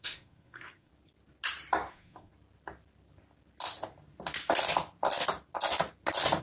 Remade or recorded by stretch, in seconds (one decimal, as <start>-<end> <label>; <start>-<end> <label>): 0.0-0.9 remade; 0.9-1.9 recorded; 1.9-2.3 remade; 2.3-6.4 recorded